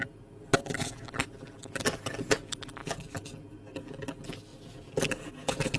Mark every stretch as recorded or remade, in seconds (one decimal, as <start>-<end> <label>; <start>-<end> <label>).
0.0-2.8 recorded; 2.8-3.5 remade; 3.5-4.5 recorded; 4.5-5.3 remade; 5.3-5.8 recorded